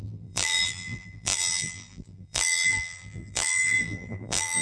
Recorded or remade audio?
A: remade